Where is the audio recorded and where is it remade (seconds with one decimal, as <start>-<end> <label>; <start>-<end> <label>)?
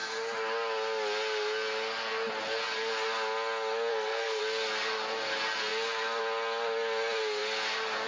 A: 0.0-3.9 recorded; 3.9-4.4 remade; 4.4-8.1 recorded